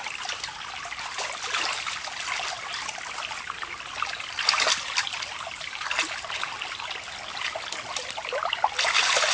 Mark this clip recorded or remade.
recorded